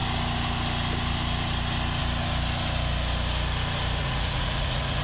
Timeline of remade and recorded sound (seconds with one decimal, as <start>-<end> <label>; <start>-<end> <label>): 0.0-4.0 recorded; 4.0-5.0 remade